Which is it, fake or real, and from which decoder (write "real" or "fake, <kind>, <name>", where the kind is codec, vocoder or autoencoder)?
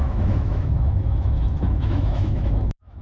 fake, autoencoder, DAC-VAE